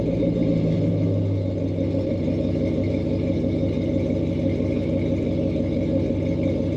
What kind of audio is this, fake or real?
real